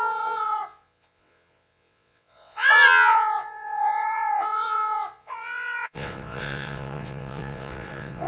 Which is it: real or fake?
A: fake